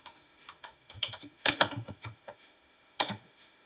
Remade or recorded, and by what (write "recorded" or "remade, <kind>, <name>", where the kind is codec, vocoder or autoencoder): remade, autoencoder, DAC-VAE